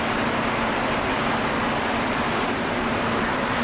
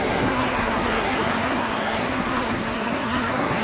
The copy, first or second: second